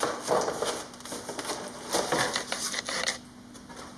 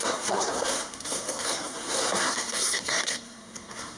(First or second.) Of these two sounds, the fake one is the second